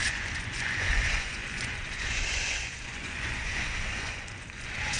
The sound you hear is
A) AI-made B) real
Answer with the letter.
A